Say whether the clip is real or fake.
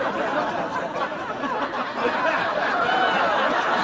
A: real